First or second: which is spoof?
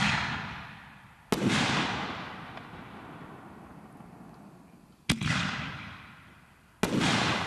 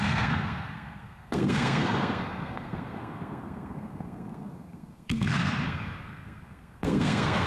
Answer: second